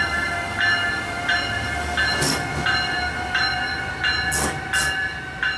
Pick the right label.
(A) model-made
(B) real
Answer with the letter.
B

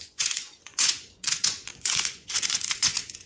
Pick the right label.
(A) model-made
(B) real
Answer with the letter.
A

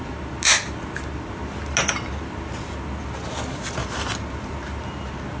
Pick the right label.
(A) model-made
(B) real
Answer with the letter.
B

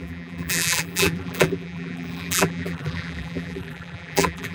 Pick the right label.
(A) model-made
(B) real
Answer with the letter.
A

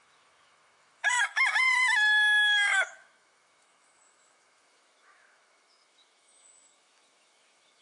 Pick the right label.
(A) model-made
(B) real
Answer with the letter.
A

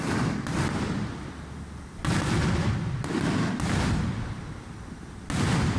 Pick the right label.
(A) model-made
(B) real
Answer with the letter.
B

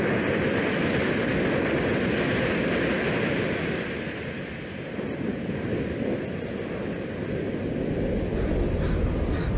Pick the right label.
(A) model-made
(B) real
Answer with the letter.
B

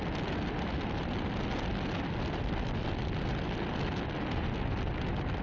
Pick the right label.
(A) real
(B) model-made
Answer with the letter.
A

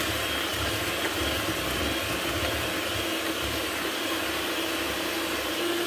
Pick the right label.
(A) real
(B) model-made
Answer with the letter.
A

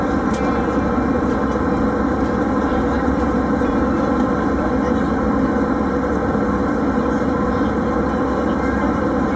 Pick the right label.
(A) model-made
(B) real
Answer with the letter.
B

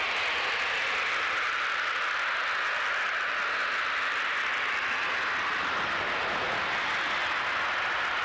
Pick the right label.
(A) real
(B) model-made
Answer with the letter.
A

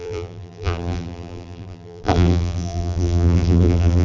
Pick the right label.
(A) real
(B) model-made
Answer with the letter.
B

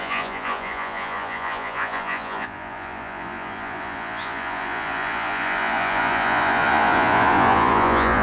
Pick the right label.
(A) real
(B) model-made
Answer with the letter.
B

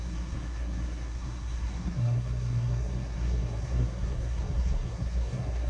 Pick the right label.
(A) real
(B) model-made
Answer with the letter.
B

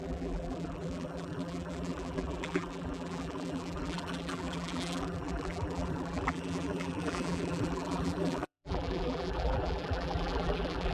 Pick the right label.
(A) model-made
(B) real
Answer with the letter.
A